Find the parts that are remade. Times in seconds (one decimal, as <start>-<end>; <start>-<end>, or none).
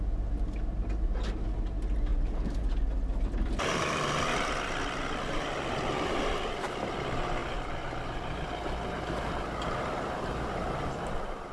none